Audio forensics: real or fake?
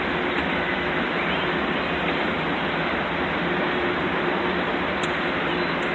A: real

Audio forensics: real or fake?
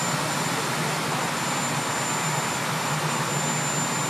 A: real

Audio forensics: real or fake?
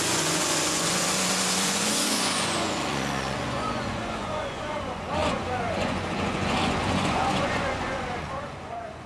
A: fake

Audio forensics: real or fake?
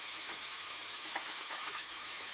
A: fake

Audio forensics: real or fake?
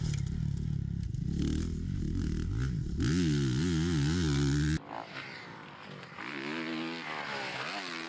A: real